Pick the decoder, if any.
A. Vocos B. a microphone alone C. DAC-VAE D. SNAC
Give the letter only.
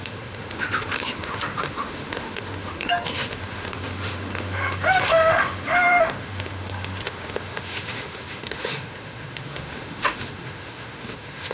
C